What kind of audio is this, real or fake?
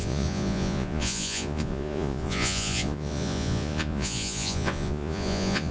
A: fake